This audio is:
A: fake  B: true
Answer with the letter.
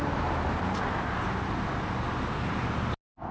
B